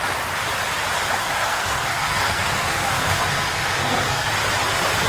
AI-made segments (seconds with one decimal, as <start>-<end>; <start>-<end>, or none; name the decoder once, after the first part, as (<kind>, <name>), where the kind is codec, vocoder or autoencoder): 1.2-4.3 (codec, SNAC)